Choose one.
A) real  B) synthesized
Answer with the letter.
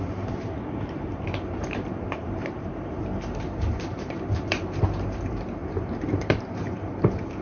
B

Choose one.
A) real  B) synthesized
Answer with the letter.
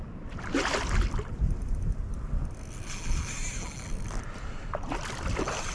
A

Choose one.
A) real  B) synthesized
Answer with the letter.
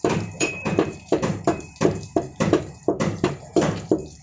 B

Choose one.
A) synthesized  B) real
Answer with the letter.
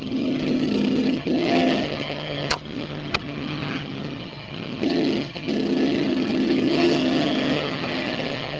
A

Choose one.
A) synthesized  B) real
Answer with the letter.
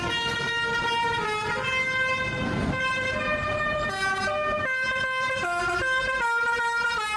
B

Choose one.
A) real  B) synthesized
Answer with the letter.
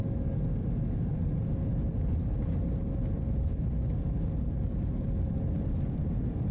A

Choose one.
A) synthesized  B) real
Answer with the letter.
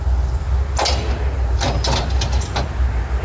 B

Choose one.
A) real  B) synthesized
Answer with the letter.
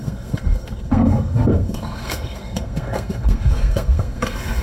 B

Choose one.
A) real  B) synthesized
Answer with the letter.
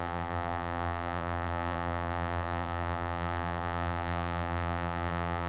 B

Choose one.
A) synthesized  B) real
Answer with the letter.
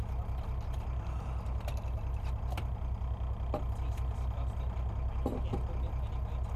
B